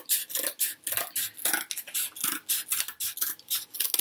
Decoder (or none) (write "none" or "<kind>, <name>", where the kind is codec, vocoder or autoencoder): none